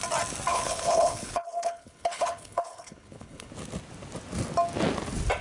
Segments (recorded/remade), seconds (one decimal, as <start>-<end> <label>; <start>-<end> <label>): 0.0-0.5 recorded; 0.5-3.5 remade; 3.5-5.4 recorded